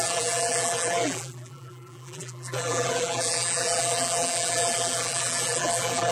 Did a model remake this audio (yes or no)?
yes